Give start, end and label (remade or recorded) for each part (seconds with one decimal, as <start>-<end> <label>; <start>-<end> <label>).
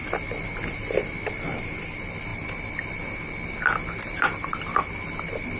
0.0-5.6 recorded